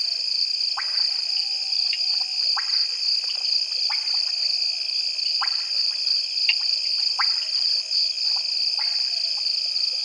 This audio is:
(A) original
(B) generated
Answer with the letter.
A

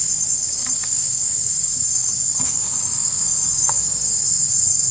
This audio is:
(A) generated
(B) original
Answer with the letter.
A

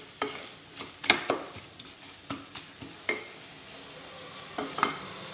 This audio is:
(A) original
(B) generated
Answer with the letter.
A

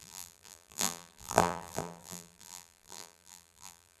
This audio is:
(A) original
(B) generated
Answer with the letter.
B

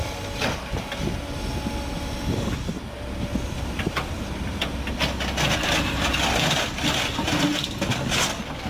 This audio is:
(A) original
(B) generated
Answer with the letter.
A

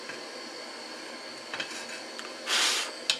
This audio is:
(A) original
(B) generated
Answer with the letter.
A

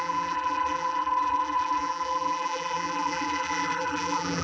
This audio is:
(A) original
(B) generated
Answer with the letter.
B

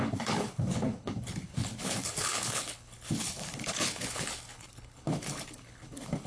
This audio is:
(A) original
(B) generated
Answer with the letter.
B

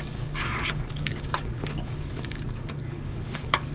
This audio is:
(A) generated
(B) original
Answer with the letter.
A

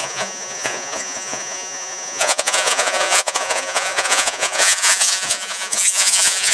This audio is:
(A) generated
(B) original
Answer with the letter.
A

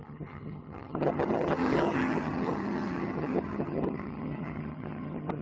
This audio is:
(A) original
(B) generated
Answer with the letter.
B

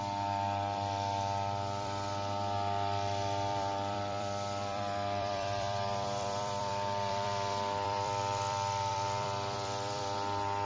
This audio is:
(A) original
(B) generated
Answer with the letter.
B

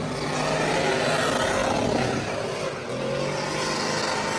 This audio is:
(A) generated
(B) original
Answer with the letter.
B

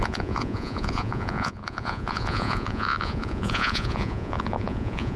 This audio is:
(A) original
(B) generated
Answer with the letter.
B